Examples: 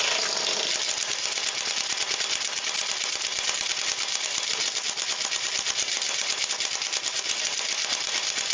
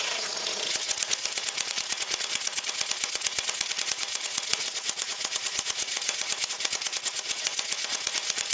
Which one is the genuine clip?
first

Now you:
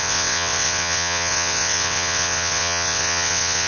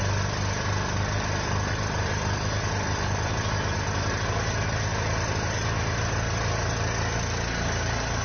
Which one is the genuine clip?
second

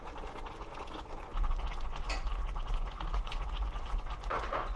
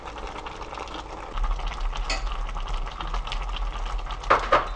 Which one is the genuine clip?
second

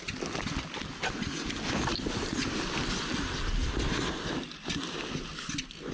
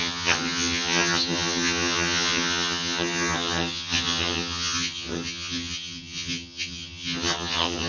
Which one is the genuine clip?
first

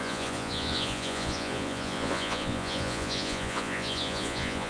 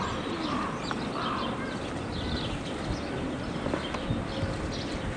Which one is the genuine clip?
second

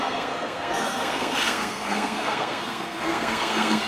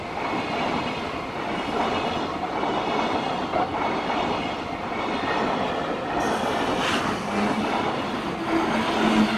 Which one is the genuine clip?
second